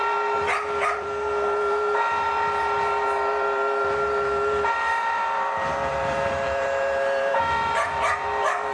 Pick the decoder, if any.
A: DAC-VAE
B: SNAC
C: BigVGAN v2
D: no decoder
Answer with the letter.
C